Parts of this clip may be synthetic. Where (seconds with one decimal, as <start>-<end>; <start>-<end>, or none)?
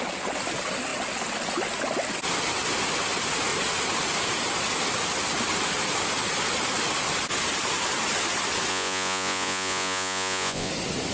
8.7-10.7